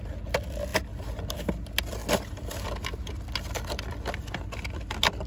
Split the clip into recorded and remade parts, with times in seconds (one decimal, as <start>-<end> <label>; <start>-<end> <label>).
0.0-5.3 recorded